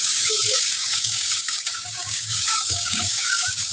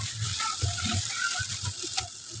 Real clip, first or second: second